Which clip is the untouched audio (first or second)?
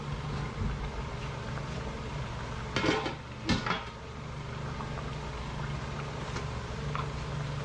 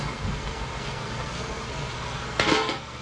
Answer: first